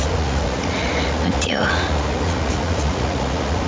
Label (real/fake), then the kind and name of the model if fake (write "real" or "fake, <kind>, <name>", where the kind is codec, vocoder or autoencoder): fake, vocoder, Vocos